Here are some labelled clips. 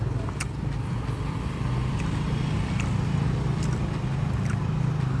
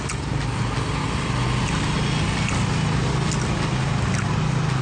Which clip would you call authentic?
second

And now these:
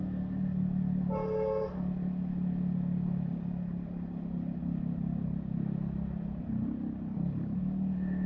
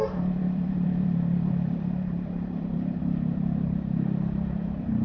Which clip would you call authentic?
first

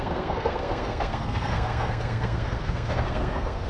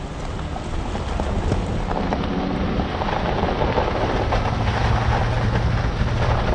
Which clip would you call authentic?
second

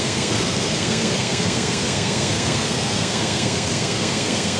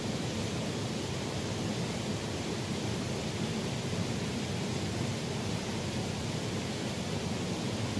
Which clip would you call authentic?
second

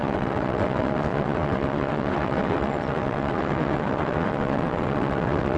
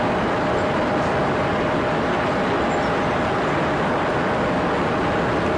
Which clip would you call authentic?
second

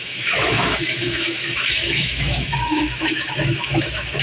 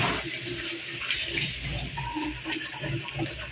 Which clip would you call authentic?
second